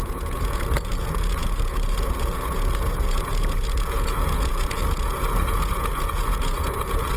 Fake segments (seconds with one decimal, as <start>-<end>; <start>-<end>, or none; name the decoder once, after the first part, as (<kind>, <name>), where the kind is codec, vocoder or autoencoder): 0.0-7.2 (vocoder, Vocos)